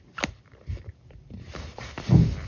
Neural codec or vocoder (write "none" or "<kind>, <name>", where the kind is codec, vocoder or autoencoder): vocoder, BigVGAN v2